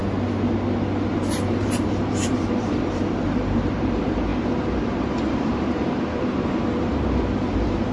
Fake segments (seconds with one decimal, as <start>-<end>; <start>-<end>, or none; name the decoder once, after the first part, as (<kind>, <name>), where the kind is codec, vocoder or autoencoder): 1.1-4.3 (vocoder, BigVGAN v2); 5.2-7.9